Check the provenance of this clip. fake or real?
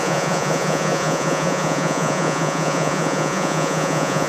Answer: fake